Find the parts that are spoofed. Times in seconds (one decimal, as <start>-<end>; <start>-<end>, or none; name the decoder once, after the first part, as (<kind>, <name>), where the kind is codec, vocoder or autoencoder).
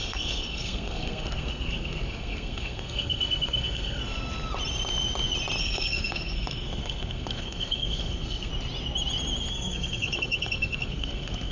0.0-4.0 (codec, SNAC); 5.6-8.5; 9.5-11.5